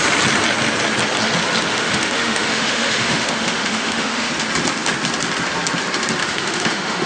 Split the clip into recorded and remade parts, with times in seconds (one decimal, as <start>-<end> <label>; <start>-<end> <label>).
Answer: 0.0-1.7 recorded; 1.7-4.3 remade; 4.3-6.2 recorded; 6.2-7.1 remade